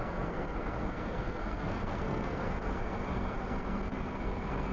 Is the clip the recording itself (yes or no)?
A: no